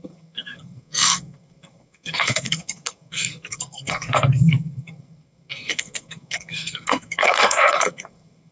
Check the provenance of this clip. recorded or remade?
remade